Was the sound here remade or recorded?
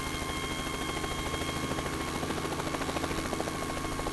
recorded